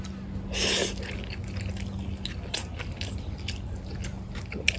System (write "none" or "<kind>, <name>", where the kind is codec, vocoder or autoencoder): none